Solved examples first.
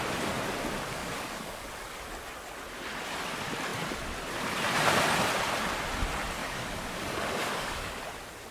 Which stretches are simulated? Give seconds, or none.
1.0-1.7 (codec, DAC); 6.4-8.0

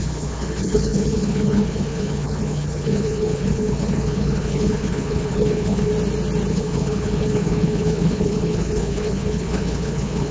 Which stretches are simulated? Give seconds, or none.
0.0-5.9 (codec, HILCodec); 6.5-10.3

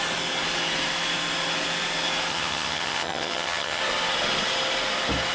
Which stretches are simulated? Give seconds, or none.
2.3-3.8 (vocoder, HiFi-GAN)